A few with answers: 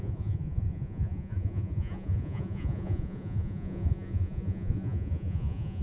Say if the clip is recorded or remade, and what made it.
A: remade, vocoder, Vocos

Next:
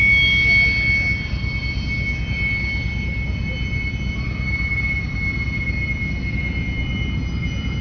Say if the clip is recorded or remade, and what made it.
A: recorded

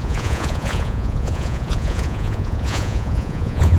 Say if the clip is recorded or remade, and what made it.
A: remade, vocoder, Vocos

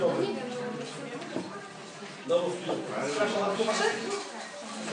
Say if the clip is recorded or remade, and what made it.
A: recorded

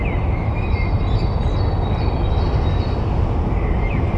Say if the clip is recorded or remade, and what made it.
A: recorded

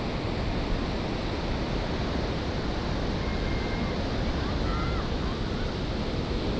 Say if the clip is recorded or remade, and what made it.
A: recorded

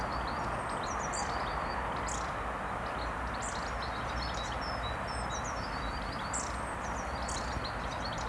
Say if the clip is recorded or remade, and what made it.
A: recorded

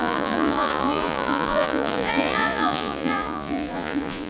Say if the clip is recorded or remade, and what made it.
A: remade, vocoder, Vocos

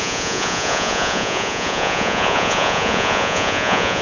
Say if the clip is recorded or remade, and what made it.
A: remade, vocoder, Vocos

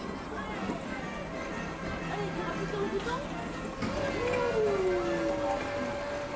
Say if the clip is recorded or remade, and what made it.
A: recorded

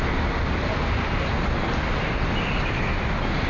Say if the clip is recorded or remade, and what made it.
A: recorded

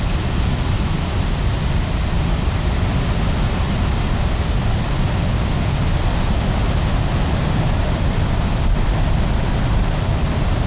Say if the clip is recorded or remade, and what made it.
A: recorded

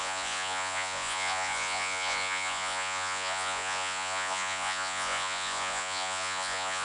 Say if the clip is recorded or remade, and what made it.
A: remade, vocoder, Vocos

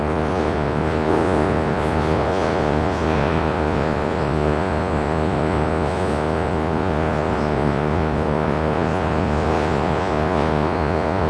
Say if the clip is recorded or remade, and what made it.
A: remade, vocoder, Vocos